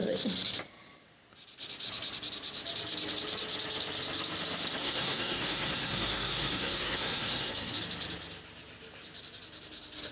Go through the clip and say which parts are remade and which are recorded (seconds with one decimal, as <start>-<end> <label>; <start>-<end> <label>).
0.0-4.8 recorded; 4.8-7.8 remade; 7.8-10.1 recorded